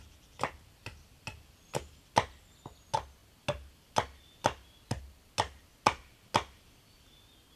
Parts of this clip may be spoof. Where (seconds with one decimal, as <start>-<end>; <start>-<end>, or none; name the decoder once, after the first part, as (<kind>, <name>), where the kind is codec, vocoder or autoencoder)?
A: none